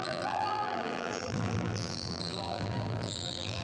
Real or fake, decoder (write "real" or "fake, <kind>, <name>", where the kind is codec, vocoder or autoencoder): fake, vocoder, BigVGAN v2